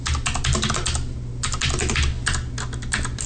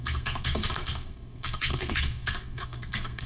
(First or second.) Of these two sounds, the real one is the first